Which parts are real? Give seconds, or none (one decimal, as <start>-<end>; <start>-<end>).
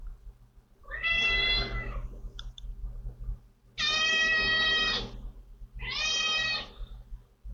0.0-7.5